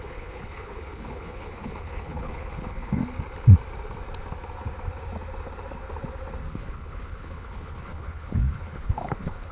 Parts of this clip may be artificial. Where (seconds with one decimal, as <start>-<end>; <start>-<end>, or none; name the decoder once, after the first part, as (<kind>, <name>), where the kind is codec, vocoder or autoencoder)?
0.0-3.0 (codec, HILCodec); 6.5-9.5